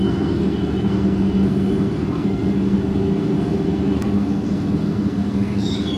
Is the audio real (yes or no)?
no